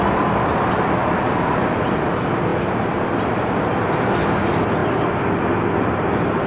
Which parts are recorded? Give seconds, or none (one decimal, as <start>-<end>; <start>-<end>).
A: 0.0-2.5; 3.8-4.8; 5.4-6.5